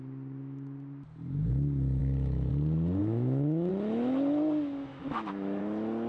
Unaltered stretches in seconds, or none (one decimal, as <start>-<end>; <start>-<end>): 0.0-2.0; 2.5-3.0; 3.7-4.9; 5.6-6.1